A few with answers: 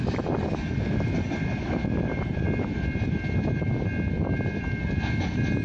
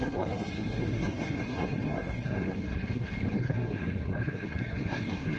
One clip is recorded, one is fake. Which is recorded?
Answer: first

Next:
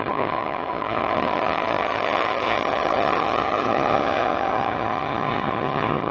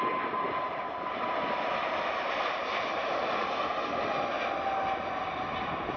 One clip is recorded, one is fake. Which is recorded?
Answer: second